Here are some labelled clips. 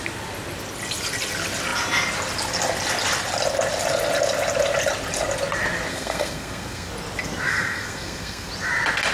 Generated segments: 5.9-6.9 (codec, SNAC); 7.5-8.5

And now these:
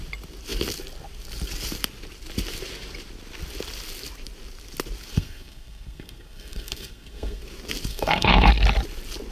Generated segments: 5.1-7.4 (codec, SNAC); 7.9-8.5

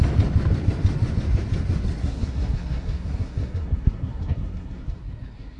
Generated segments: 2.0-5.6 (codec, SNAC)

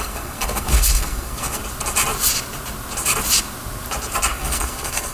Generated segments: 0.0-1.6 (codec, SNAC); 4.3-5.1